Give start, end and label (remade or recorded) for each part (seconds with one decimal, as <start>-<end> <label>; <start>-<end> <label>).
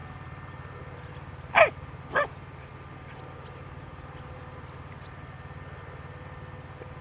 0.0-7.0 recorded